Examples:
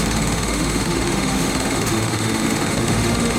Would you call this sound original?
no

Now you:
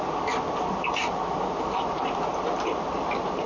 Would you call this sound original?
yes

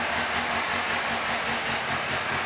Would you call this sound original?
yes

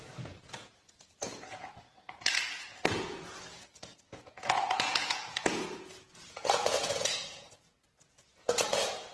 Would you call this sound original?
no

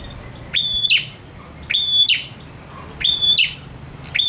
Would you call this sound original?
yes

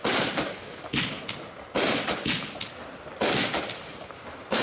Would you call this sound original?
yes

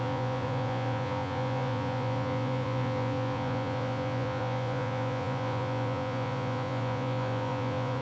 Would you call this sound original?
no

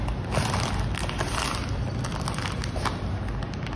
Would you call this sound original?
yes